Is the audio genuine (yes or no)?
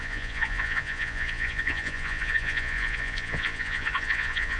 no